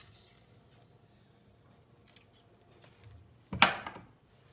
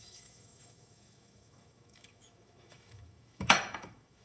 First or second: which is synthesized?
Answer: second